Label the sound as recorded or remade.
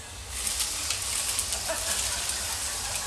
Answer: recorded